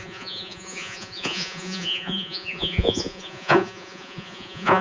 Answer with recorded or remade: remade